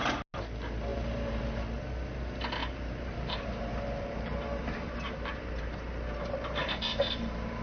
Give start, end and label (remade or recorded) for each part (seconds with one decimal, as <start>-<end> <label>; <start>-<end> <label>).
0.0-0.9 recorded; 0.9-1.4 remade; 1.4-2.6 recorded; 2.6-7.6 remade